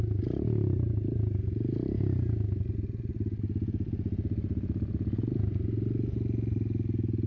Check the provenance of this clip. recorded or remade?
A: recorded